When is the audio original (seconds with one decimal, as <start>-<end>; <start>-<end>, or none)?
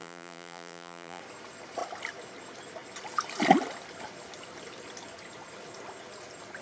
1.2-6.6